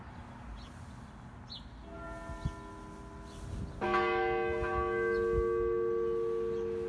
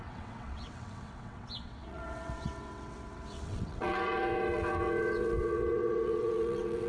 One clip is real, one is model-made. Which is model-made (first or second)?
second